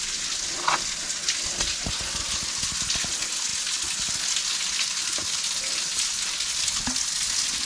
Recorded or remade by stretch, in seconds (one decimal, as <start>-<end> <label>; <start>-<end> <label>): 0.0-7.7 recorded